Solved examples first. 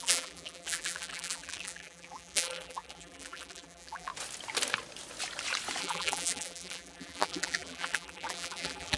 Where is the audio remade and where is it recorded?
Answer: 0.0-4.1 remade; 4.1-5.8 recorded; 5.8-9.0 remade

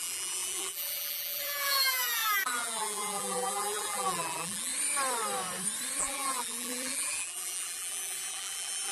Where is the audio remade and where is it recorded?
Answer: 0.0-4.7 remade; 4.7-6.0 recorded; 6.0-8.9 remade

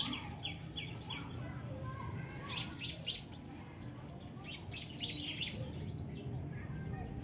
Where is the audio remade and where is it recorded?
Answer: 0.0-7.2 recorded

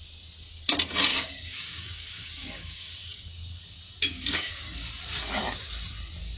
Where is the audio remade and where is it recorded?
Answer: 0.0-1.1 recorded; 1.1-4.9 remade; 4.9-6.4 recorded